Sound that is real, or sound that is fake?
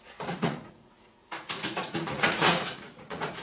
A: fake